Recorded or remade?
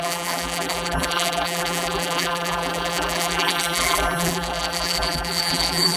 remade